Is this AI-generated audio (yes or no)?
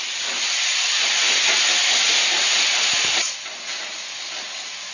no